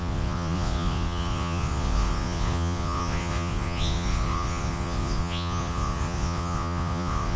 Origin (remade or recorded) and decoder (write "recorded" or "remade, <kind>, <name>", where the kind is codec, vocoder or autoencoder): remade, vocoder, Vocos